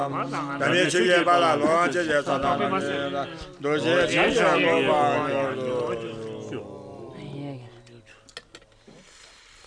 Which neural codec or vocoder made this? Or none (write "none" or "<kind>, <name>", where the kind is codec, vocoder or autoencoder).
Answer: none